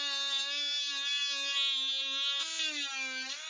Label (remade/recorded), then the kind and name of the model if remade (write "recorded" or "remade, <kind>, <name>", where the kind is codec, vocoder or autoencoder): recorded